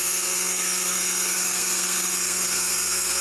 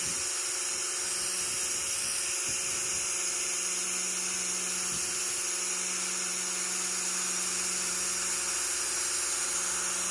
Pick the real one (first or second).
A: second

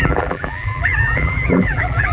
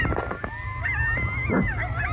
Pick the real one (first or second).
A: second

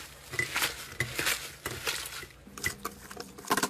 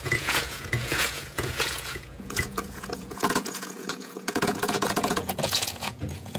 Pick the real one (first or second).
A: first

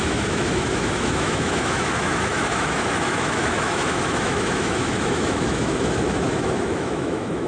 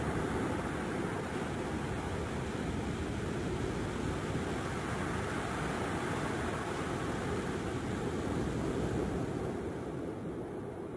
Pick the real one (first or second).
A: second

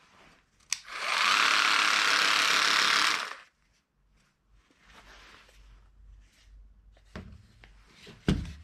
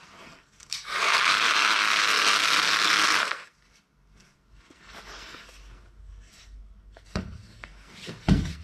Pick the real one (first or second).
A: first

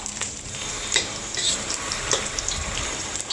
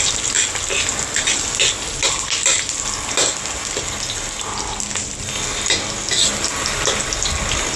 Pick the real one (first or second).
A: second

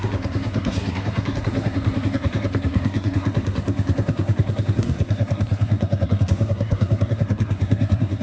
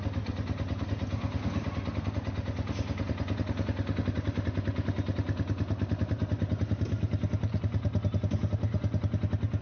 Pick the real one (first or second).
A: second